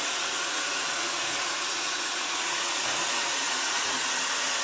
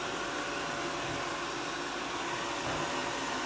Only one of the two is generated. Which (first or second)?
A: first